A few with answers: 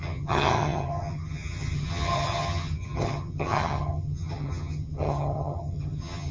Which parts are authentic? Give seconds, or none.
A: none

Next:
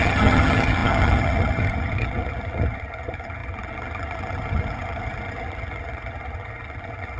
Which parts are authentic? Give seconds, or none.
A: none

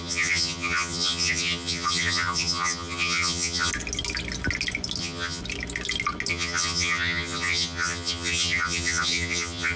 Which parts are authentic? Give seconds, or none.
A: 3.7-5.0; 5.4-6.3

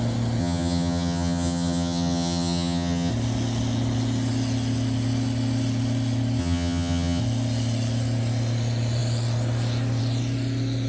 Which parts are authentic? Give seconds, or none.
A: 0.0-0.4; 3.1-6.4; 7.2-10.9

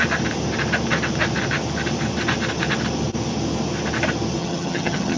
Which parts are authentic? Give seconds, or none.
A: 0.0-4.4

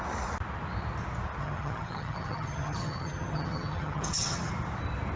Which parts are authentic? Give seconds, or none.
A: 0.0-1.4; 4.5-5.2

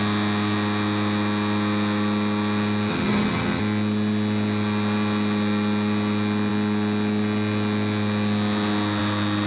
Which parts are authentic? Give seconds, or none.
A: 0.0-2.9; 3.6-9.5

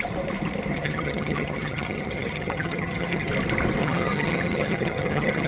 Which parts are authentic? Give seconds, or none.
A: 0.0-0.7; 3.3-3.8